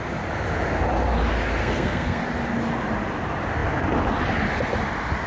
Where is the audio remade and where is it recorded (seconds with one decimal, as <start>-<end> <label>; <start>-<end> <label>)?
0.0-1.6 recorded; 1.6-2.2 remade; 2.2-5.3 recorded